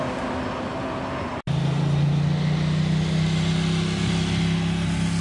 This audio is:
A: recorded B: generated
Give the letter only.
A